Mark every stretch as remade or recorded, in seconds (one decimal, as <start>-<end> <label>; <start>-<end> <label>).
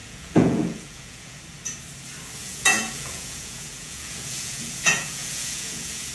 0.0-1.4 remade; 1.4-2.4 recorded; 2.4-6.1 remade